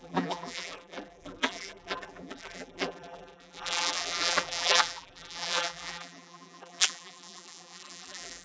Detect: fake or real fake